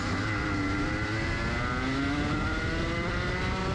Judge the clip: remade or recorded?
recorded